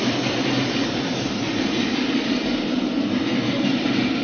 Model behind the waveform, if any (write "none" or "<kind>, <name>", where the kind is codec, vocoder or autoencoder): vocoder, BigVGAN v2